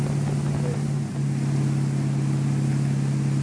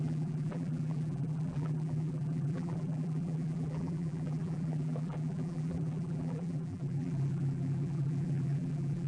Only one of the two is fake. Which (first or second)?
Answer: second